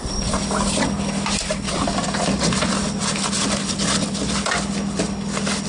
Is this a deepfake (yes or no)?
no